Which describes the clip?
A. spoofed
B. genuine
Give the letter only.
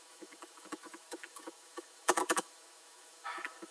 A